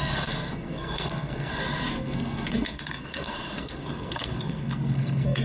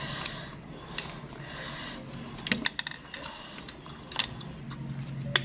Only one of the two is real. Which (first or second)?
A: second